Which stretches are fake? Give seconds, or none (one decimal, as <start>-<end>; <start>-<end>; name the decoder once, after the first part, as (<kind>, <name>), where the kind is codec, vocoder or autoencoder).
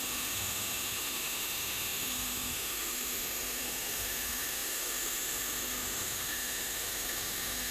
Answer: 0.0-7.7 (autoencoder, DAC-VAE)